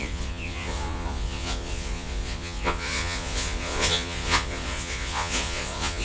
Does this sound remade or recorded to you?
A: remade